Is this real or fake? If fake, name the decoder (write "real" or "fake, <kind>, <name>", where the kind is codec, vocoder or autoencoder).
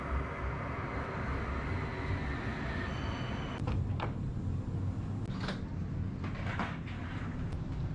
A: real